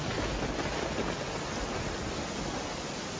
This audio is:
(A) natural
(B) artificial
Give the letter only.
A